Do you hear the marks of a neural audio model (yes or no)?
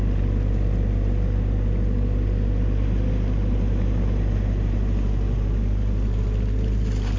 no